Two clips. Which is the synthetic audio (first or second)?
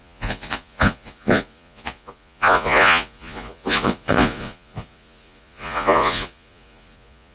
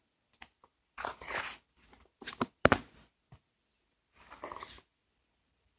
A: first